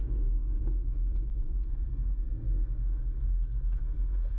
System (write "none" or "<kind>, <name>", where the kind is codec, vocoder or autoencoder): codec, SNAC